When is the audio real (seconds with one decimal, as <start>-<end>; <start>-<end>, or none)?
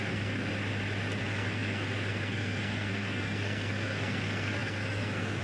0.5-1.2